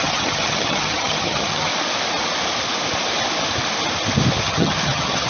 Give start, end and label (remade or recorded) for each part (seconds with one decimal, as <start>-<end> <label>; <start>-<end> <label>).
0.0-1.7 remade; 1.7-4.4 recorded; 4.4-5.3 remade